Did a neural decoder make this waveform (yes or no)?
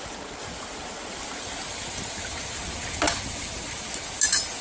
no